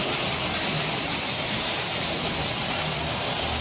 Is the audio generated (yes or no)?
yes